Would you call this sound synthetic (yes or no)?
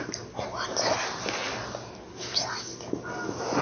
no